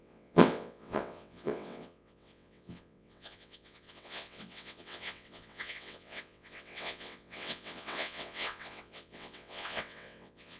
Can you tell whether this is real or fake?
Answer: fake